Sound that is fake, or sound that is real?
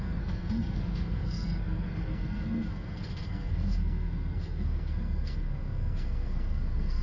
fake